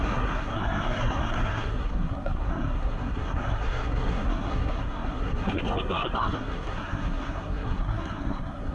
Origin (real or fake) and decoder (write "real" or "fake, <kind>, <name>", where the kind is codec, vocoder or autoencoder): fake, codec, SNAC